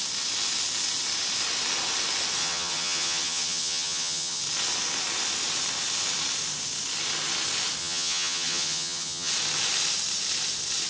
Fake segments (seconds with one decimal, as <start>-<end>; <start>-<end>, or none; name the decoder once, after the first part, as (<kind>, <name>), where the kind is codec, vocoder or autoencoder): 2.4-4.4 (vocoder, HiFi-GAN); 7.8-9.3